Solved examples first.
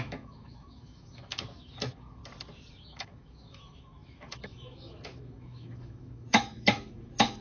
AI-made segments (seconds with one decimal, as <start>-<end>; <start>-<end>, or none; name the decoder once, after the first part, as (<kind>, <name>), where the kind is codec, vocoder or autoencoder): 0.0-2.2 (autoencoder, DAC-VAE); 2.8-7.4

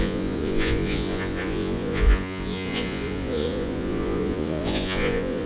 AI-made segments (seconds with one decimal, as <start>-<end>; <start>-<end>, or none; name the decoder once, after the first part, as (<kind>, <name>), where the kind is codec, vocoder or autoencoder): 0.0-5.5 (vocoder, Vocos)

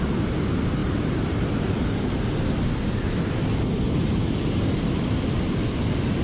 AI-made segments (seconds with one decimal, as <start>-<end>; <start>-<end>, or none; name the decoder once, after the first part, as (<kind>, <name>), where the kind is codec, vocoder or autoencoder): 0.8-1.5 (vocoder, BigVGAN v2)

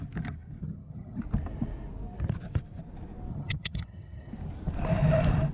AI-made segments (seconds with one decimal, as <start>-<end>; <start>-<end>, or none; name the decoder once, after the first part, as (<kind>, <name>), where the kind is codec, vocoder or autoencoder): 0.6-1.2 (vocoder, HiFi-GAN); 3.3-4.3

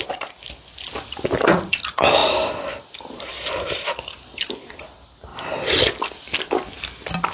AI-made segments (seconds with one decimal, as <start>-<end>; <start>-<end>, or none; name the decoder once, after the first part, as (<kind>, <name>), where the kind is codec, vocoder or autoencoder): none

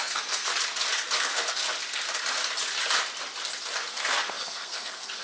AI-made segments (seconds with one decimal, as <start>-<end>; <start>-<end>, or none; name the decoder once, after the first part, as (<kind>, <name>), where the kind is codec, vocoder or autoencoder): 0.0-0.5 (codec, SNAC); 1.2-1.6; 3.9-5.2